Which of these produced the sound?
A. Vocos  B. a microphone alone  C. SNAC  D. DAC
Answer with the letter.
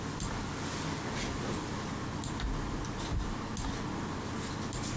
B